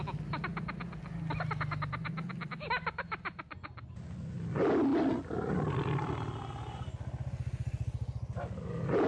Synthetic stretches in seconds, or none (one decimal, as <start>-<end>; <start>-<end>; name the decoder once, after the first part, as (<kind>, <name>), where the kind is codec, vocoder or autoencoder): none